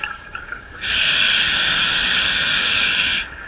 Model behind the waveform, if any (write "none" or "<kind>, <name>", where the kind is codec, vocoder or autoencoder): codec, DAC